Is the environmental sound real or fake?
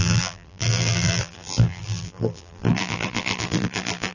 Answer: fake